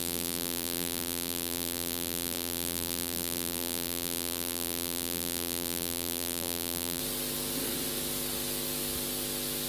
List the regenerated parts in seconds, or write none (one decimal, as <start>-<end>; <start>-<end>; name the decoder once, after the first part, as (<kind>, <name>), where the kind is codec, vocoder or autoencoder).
0.0-7.0 (vocoder, BigVGAN v2)